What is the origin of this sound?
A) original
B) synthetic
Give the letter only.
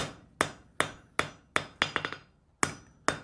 A